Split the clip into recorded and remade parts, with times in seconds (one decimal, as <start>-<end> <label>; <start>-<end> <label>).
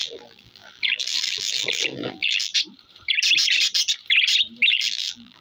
0.0-2.5 remade; 2.5-4.7 recorded; 4.7-5.4 remade